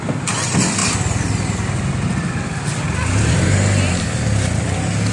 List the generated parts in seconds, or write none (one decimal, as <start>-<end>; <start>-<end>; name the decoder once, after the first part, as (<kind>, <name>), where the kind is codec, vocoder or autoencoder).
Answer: none